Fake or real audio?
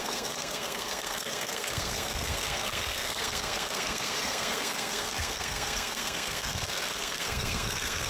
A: fake